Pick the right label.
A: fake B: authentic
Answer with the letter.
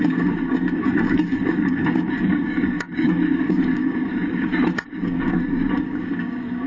A